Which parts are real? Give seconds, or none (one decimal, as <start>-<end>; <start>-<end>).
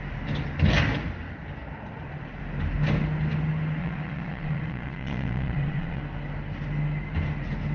0.0-3.8; 6.0-7.7